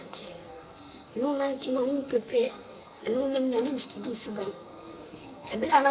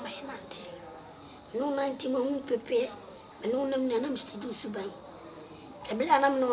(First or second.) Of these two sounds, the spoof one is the first